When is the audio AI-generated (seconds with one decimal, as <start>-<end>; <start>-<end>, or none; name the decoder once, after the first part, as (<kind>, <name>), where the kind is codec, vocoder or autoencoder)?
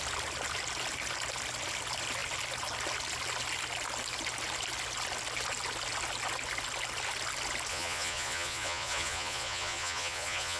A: 7.7-10.6 (vocoder, Vocos)